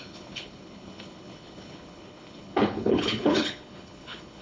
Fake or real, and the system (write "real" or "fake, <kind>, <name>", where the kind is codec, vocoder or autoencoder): fake, codec, HILCodec